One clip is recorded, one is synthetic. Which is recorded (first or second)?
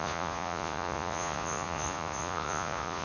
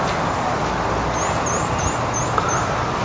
second